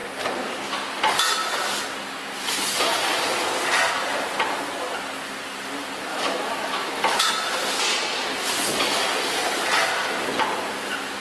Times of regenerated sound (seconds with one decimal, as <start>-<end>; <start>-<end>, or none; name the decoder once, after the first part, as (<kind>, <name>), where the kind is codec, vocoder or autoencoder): 6.1-7.3 (autoencoder, DAC-VAE)